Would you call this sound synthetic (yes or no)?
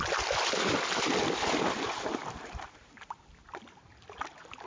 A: no